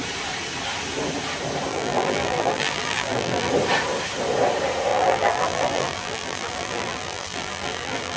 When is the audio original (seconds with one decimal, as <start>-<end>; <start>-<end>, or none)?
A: 0.0-1.7; 3.5-4.9